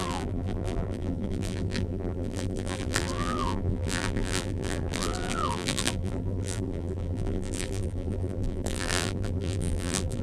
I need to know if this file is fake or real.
fake